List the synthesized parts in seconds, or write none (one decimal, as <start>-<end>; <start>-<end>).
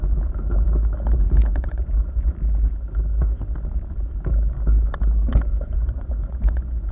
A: 1.5-2.3; 5.5-6.9